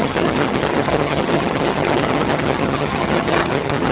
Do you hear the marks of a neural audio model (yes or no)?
yes